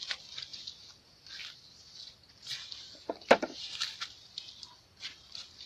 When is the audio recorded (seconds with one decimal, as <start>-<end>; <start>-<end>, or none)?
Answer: 0.0-5.7